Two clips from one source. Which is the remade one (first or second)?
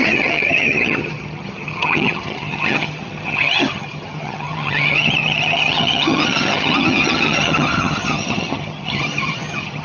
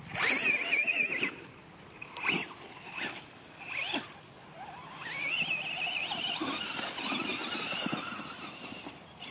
first